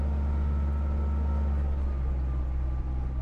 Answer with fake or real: real